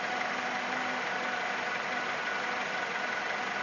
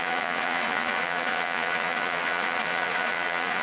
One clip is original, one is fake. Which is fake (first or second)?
second